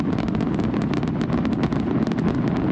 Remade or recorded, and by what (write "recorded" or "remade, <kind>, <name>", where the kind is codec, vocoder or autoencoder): recorded